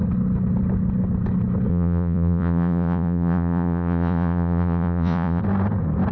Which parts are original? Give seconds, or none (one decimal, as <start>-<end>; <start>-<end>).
0.0-1.7; 5.4-6.1